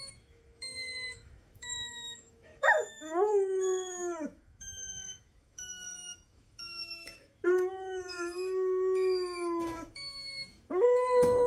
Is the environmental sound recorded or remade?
remade